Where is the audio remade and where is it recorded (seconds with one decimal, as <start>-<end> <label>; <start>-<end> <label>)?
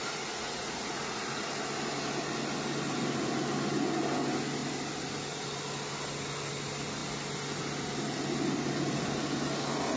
0.0-1.5 remade; 1.5-10.0 recorded